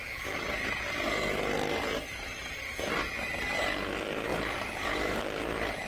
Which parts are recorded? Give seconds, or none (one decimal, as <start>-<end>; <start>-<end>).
0.0-2.3; 3.6-4.3; 5.2-5.9